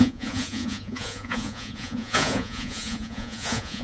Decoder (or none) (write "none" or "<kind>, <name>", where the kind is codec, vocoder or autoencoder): vocoder, Vocos